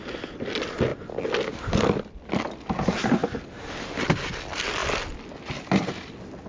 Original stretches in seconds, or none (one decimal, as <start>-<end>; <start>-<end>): 0.0-6.5